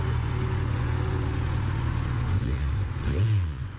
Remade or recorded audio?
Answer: remade